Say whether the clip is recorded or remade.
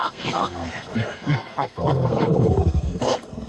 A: remade